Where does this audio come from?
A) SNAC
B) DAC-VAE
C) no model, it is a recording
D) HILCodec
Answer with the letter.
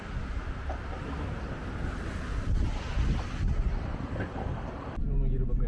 C